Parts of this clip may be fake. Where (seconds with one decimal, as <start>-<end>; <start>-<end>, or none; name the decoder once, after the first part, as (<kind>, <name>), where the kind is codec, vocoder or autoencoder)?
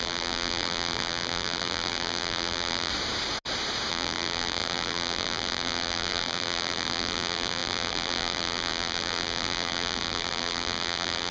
0.0-2.9 (vocoder, BigVGAN v2); 3.9-11.3